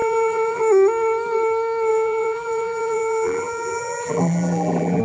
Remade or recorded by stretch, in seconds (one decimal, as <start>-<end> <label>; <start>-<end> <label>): 0.0-0.6 remade; 0.6-1.9 recorded; 1.9-5.0 remade